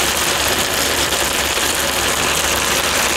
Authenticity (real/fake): fake